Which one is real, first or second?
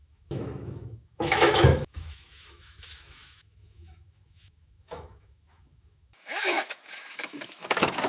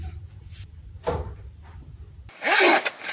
second